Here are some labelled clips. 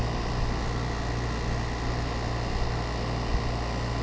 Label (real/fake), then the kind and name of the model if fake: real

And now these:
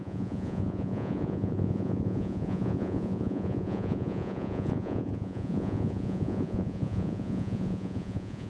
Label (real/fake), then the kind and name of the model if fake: fake, vocoder, Vocos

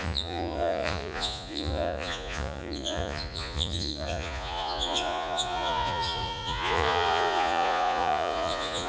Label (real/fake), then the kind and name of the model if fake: fake, vocoder, Vocos